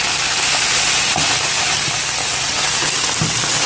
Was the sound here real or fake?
real